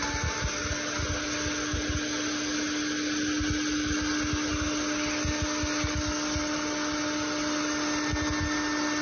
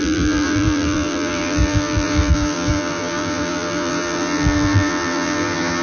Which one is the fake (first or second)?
second